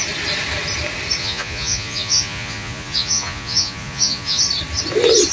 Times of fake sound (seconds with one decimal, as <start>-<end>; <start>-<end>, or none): 1.2-4.4